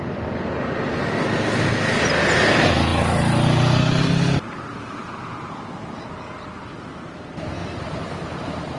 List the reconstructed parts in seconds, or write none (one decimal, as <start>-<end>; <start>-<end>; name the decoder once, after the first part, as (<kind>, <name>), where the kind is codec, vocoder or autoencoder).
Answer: 5.0-6.0 (vocoder, BigVGAN v2); 7.6-8.4